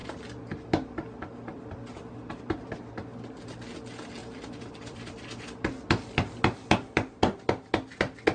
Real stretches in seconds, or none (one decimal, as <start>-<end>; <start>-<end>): 0.0-4.2; 5.4-8.3